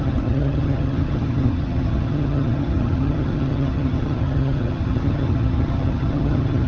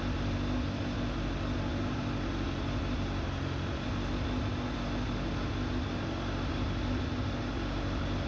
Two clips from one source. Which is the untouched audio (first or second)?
second